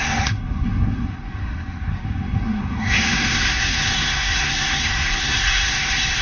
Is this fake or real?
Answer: fake